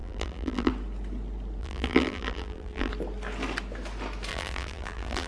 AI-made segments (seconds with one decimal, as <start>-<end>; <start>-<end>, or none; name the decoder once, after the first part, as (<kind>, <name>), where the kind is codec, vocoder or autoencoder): 0.0-0.7 (vocoder, BigVGAN v2); 1.6-2.9; 4.3-5.3